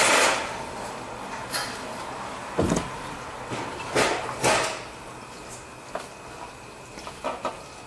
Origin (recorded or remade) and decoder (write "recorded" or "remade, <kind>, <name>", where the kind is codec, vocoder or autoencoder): recorded